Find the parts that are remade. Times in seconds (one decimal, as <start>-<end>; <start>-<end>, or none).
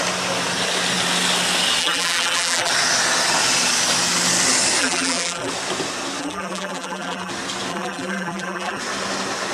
1.8-2.7; 4.8-5.5; 6.2-7.3; 7.7-8.8